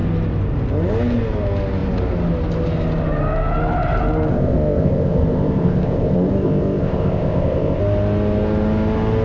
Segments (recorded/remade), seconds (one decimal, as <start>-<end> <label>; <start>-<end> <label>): 0.0-4.3 recorded; 4.3-7.8 remade; 7.8-9.2 recorded